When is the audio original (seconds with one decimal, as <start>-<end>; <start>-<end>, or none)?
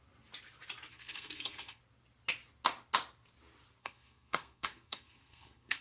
0.0-0.9; 1.8-3.8